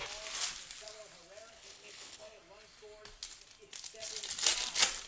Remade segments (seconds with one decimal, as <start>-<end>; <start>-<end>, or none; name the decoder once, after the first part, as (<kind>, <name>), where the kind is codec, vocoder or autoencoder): 1.5-2.4 (codec, HILCodec)